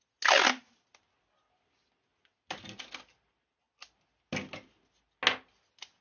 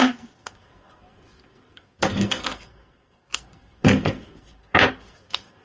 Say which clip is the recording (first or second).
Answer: first